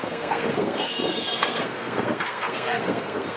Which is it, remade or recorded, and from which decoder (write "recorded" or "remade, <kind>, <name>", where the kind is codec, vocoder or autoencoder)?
remade, codec, SNAC